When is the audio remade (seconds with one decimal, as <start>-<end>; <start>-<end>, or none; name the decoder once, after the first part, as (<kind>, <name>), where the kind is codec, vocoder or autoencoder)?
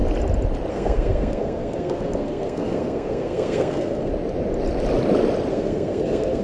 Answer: 0.7-4.1 (codec, SNAC); 5.5-6.4